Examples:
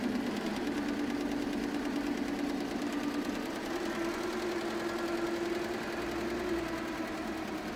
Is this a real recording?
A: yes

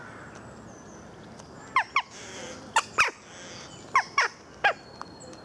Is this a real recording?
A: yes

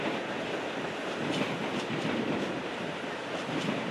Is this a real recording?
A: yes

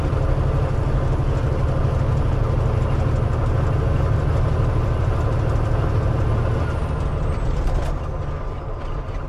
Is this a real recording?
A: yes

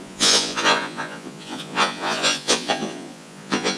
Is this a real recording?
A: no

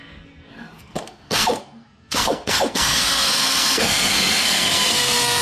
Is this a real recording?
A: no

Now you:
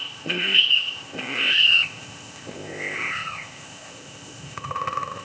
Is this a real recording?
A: no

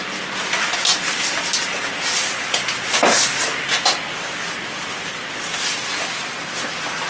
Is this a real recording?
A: yes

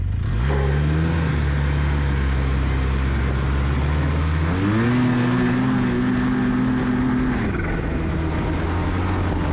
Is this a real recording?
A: yes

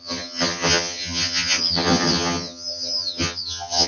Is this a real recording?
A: no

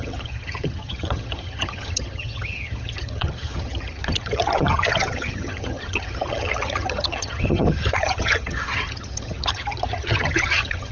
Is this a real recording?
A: no